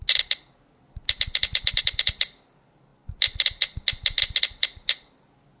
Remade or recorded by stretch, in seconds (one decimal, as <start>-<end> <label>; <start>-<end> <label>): 0.0-5.6 recorded